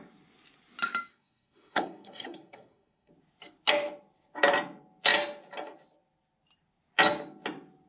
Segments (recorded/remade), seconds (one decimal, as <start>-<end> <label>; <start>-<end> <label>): 0.0-1.1 recorded; 1.1-3.1 remade; 3.1-7.9 recorded